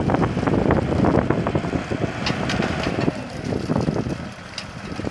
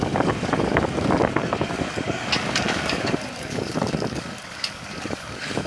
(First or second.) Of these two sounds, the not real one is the second